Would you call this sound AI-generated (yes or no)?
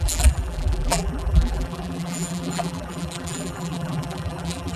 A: yes